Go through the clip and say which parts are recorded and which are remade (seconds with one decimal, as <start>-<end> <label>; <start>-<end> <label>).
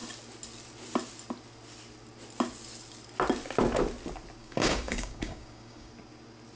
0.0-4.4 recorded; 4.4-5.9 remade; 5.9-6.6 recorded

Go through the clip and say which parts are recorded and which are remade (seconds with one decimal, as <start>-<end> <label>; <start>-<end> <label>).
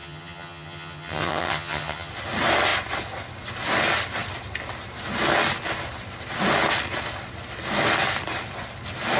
0.0-2.1 remade; 2.1-9.2 recorded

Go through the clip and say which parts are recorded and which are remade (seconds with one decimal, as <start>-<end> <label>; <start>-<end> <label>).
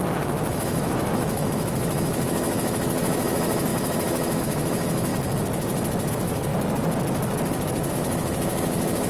0.0-5.1 remade; 5.1-6.1 recorded; 6.1-6.5 remade; 6.5-7.9 recorded; 7.9-9.1 remade